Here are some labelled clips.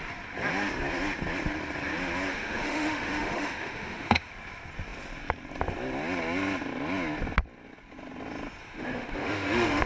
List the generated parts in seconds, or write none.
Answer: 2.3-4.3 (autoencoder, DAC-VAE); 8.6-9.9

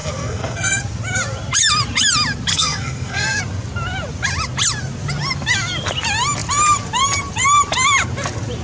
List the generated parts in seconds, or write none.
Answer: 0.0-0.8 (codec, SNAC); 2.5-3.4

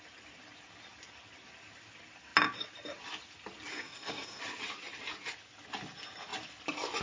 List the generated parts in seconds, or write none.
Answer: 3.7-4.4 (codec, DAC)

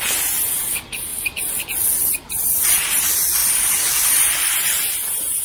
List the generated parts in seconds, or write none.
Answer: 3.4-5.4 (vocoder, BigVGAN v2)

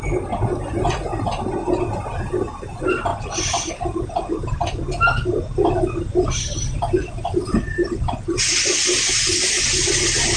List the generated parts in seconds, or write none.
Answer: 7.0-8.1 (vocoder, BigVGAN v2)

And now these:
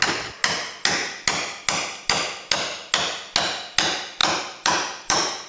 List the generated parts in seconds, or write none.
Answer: 4.2-5.5 (vocoder, BigVGAN v2)

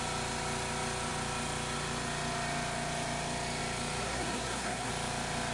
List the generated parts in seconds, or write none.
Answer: 4.0-4.9 (codec, SNAC)

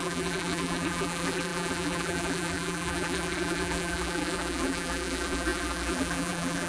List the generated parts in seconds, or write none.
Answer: 0.0-6.7 (vocoder, BigVGAN v2)